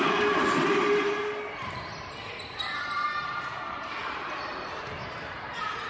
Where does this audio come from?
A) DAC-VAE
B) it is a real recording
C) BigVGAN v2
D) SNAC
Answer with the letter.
C